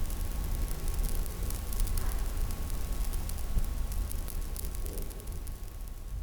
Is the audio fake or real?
real